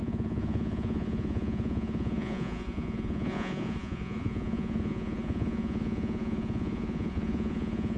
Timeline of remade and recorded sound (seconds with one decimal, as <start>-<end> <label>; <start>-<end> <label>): 0.0-8.0 remade